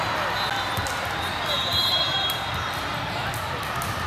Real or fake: real